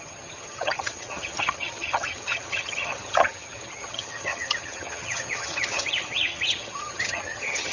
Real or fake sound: fake